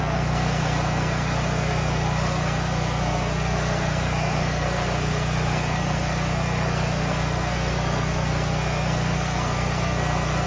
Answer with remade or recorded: remade